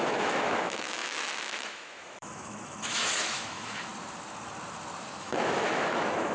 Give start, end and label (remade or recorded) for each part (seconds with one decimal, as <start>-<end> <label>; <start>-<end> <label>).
0.0-3.9 remade; 3.9-5.2 recorded; 5.2-6.3 remade